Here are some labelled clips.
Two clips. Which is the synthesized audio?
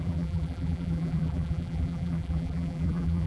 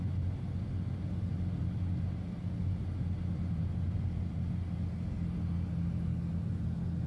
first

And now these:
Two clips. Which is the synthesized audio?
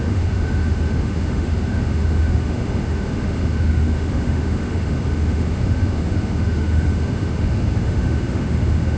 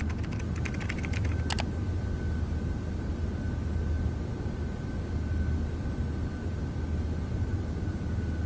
first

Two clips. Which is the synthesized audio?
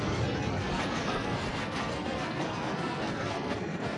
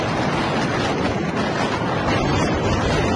first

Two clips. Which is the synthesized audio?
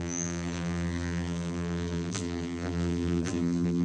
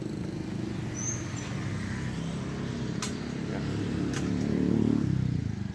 first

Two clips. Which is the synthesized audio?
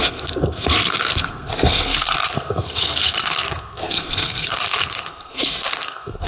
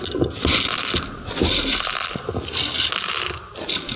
first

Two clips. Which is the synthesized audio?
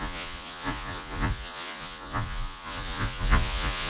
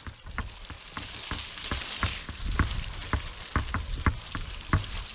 first